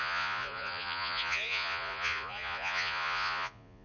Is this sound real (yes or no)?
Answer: no